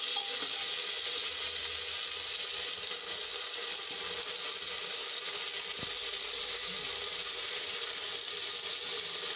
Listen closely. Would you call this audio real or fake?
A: real